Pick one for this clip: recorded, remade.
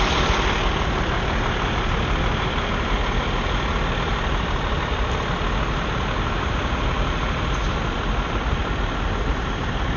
recorded